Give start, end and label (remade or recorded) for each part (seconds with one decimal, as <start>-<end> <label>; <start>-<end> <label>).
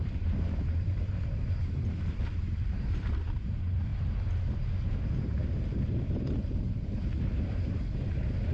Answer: 0.0-3.9 remade; 3.9-5.2 recorded; 5.2-8.5 remade